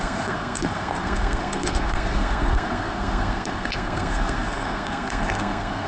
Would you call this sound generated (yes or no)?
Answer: yes